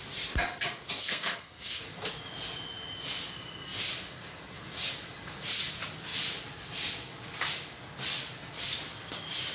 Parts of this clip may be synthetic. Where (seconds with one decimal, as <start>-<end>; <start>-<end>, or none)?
1.0-1.8